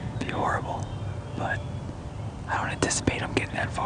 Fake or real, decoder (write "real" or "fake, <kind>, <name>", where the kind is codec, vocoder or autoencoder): real